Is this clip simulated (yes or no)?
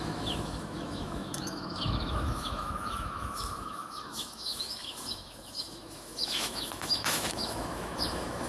yes